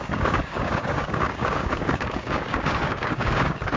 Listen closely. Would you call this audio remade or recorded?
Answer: remade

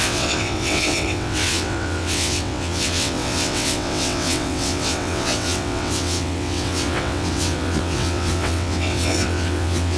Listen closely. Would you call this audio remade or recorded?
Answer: remade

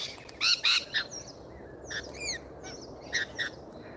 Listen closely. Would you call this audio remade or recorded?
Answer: recorded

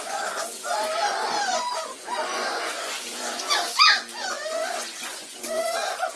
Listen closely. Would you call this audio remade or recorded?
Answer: remade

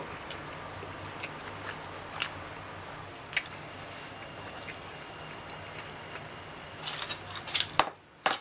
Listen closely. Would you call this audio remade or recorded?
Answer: recorded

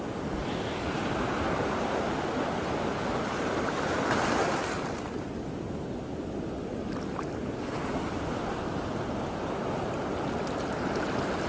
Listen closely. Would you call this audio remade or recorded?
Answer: recorded